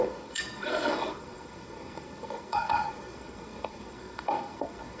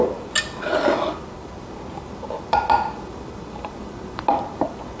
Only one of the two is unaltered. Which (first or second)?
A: second